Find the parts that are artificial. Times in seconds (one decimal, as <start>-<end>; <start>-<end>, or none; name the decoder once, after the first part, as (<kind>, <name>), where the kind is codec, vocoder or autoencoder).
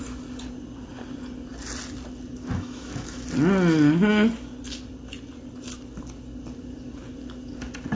2.4-3.3 (autoencoder, DAC-VAE)